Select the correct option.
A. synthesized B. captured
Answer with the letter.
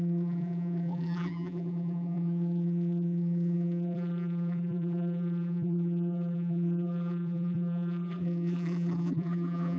A